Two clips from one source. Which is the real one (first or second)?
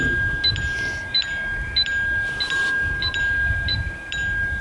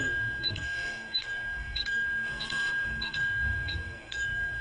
first